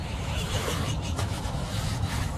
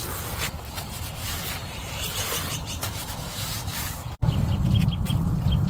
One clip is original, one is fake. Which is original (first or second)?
second